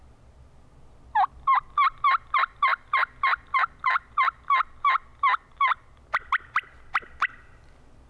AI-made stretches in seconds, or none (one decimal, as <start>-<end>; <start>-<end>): none